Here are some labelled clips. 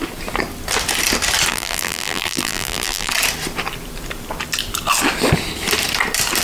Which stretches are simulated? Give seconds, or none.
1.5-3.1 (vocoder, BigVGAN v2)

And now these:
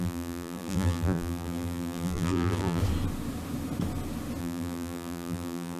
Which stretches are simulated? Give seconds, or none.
0.0-2.8 (vocoder, BigVGAN v2); 4.4-5.8

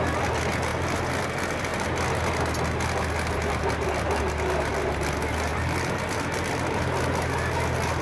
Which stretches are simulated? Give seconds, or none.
5.5-7.0 (vocoder, BigVGAN v2)

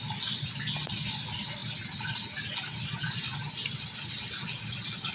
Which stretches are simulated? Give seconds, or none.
none

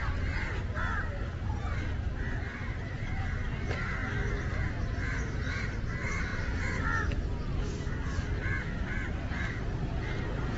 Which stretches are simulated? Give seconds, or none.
none

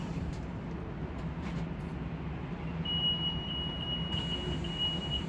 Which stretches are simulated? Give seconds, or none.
none

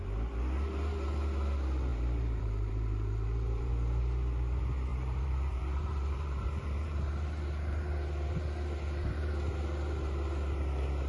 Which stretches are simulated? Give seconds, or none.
1.9-3.7 (vocoder, BigVGAN v2); 4.9-7.0

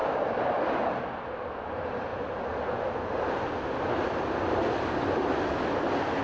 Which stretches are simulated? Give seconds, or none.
0.0-0.8 (vocoder, BigVGAN v2)